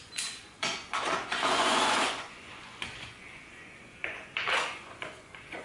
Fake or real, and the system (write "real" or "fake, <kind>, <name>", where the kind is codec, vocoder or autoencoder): fake, vocoder, Vocos